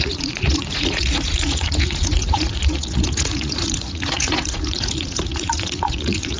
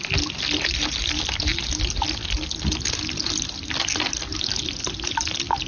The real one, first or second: second